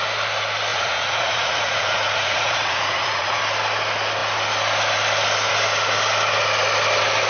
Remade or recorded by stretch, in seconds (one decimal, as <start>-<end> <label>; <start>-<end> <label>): 0.0-0.7 recorded; 0.7-3.4 remade; 3.4-7.3 recorded